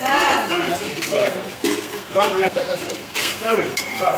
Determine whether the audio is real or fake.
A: fake